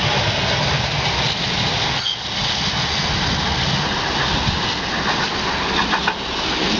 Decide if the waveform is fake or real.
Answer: real